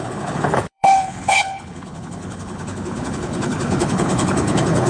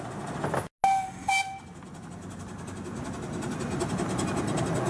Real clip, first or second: second